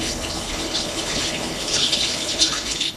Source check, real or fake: fake